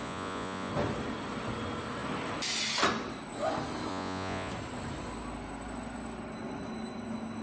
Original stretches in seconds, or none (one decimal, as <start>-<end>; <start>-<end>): 0.7-3.9; 4.5-7.4

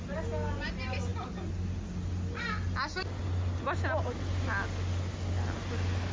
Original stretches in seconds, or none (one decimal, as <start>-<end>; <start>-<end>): 0.0-6.1

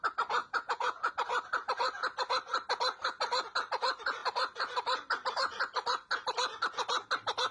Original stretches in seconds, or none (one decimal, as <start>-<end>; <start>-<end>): 0.0-0.4; 1.1-7.5

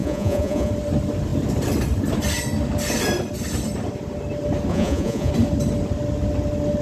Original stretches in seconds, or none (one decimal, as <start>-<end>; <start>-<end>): 0.7-4.7; 5.3-6.8

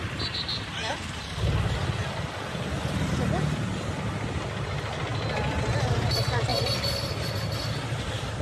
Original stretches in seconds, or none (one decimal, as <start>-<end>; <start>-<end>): 0.0-8.4

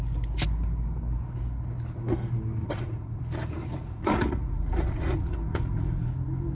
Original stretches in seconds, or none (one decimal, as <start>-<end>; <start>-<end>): 0.0-2.6; 3.2-3.6; 6.1-6.5

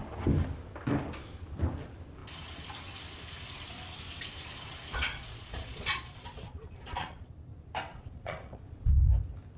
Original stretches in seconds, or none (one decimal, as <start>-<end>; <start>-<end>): 0.0-4.9; 7.3-7.9; 8.9-9.6

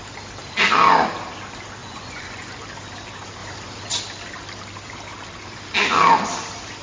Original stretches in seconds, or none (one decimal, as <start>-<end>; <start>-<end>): 0.0-1.8; 2.6-6.8